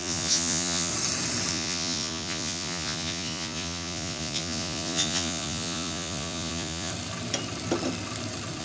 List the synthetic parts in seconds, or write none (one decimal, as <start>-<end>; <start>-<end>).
0.0-0.9; 1.5-6.9